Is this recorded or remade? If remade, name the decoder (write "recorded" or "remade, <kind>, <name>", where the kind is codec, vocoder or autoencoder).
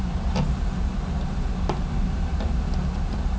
recorded